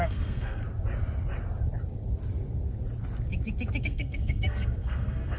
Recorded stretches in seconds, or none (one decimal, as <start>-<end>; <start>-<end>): 0.6-3.8